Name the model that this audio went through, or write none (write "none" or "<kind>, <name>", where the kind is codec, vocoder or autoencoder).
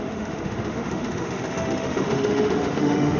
autoencoder, DAC-VAE